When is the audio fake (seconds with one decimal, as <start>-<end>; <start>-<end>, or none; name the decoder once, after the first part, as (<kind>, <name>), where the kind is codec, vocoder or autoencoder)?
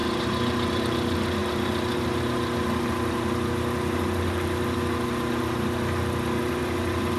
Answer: none